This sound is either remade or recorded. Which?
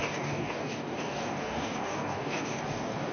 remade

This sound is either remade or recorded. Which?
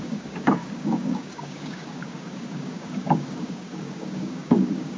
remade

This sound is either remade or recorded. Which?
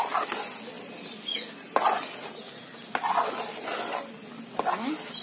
recorded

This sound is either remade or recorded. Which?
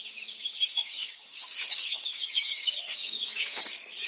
remade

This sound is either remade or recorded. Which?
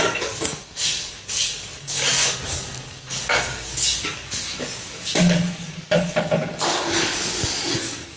remade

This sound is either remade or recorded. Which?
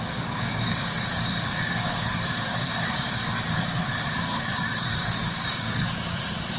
remade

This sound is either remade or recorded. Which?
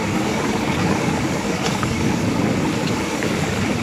remade